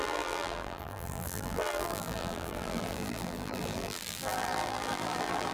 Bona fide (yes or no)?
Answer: no